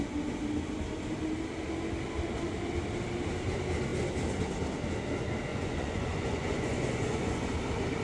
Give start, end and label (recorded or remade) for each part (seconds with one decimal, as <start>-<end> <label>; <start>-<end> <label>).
0.0-5.5 recorded; 5.5-7.5 remade; 7.5-8.0 recorded